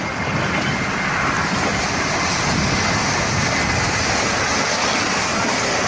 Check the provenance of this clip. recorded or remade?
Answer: recorded